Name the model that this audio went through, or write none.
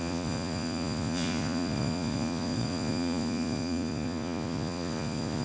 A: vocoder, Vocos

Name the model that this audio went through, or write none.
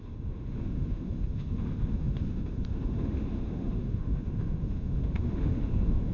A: autoencoder, DAC-VAE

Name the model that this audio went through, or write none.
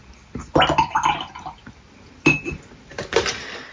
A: none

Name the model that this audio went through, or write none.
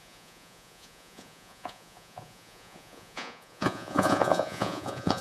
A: vocoder, Vocos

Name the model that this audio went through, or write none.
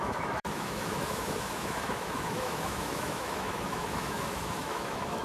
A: autoencoder, DAC-VAE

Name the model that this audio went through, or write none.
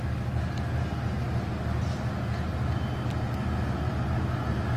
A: none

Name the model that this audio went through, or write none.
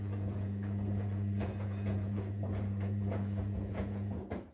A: vocoder, Vocos